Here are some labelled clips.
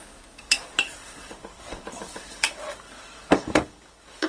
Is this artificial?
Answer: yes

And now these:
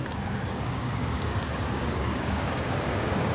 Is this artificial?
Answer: yes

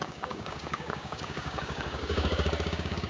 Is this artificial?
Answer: yes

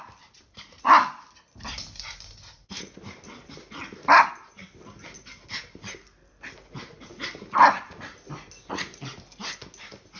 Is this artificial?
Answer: no